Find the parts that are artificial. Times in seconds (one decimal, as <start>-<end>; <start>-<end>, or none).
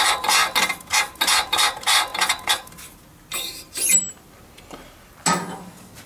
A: none